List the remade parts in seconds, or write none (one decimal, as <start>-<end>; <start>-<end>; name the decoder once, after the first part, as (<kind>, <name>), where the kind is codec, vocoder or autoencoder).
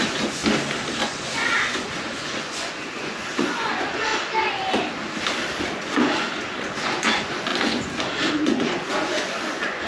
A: 0.0-0.4 (vocoder, Vocos); 1.0-4.1; 5.7-9.9